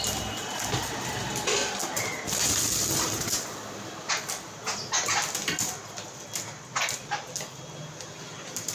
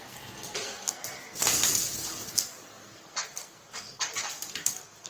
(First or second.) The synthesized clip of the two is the second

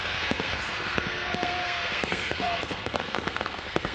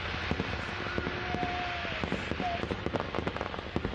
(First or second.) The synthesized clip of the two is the first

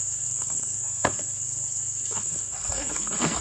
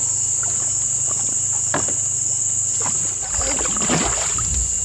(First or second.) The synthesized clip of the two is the first